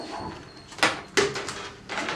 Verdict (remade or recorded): recorded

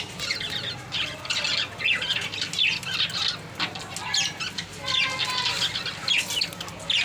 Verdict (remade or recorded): recorded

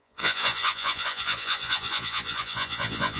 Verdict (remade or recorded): remade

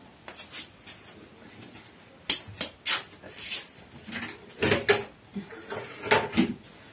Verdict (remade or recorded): recorded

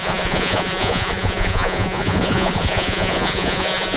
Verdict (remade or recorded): remade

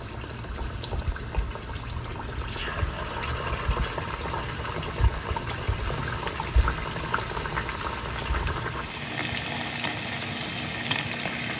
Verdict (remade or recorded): recorded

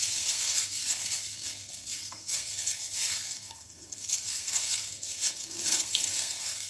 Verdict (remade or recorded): remade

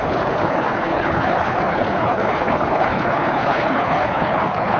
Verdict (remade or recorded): remade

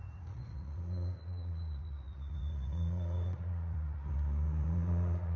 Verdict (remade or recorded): remade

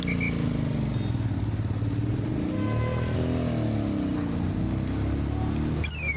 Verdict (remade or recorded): recorded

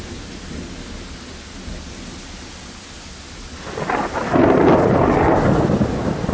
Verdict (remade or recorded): recorded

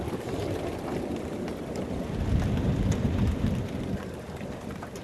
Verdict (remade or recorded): recorded